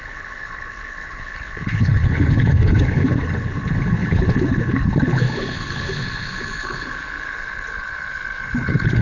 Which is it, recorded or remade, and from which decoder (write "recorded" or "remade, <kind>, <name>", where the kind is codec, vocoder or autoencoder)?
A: remade, codec, HILCodec